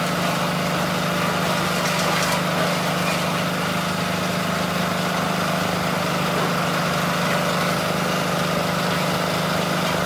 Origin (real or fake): real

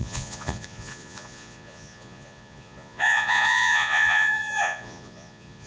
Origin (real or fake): fake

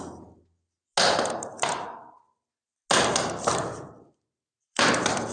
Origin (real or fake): real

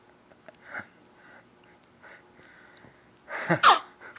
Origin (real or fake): real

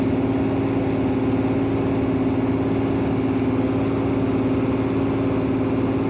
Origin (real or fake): real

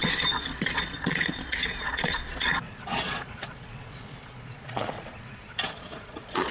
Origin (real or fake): fake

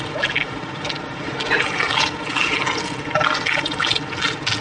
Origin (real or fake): real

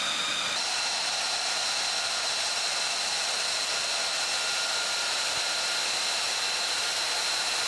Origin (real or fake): real